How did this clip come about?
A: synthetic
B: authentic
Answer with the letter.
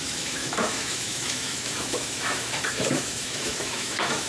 A